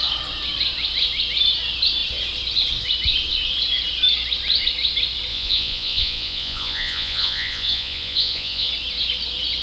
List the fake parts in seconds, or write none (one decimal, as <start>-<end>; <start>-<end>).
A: 5.3-8.7